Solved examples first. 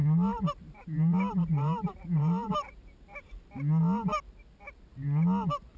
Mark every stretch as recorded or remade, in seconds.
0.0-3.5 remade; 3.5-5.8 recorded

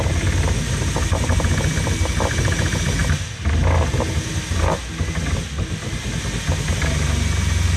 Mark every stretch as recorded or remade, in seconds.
0.0-7.8 recorded

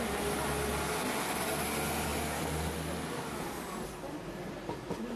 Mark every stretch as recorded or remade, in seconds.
0.0-0.7 recorded; 0.7-1.2 remade; 1.2-2.1 recorded; 2.1-5.2 remade